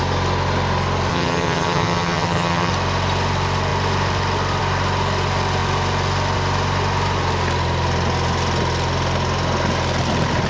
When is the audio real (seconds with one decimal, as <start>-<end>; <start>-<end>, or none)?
0.0-1.1; 2.7-10.5